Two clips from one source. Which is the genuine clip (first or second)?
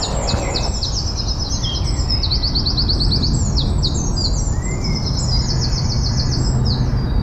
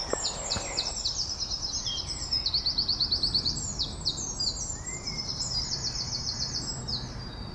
first